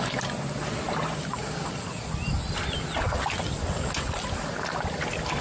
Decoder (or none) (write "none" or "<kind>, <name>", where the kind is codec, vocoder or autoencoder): none